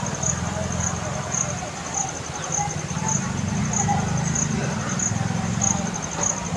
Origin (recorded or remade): recorded